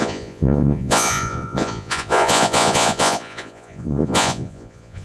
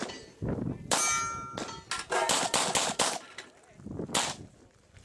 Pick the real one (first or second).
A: second